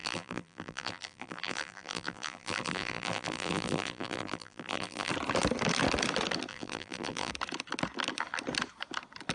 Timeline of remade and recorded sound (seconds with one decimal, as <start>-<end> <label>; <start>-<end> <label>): 0.0-5.1 remade; 5.1-6.5 recorded; 6.5-7.3 remade; 7.3-9.3 recorded